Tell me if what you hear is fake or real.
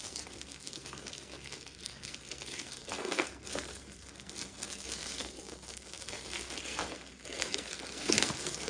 fake